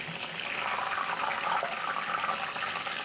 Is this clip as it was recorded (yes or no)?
yes